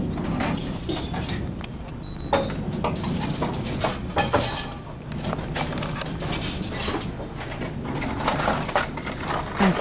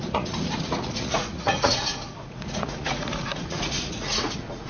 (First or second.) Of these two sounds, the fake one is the second